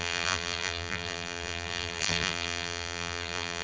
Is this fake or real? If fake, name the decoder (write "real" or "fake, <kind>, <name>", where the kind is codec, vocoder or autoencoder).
fake, vocoder, BigVGAN v2